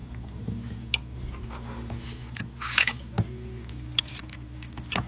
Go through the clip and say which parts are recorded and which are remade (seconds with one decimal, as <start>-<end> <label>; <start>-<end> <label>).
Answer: 0.0-5.1 recorded